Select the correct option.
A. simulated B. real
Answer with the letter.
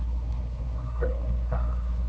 A